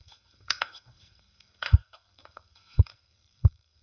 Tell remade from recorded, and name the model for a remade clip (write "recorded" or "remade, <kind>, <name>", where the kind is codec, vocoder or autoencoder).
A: remade, codec, SNAC